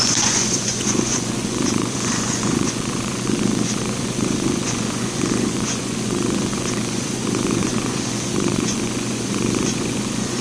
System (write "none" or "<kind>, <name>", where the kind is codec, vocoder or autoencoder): vocoder, Vocos